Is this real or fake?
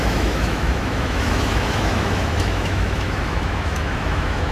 fake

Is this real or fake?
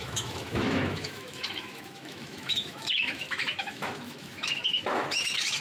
fake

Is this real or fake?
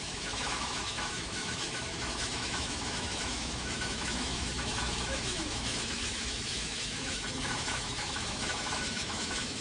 fake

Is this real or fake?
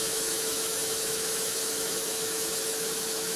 fake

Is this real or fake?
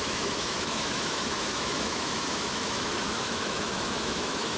fake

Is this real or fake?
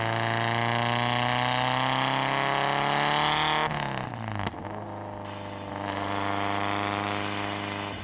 real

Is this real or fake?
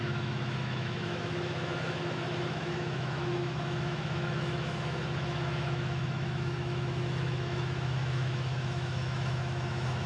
fake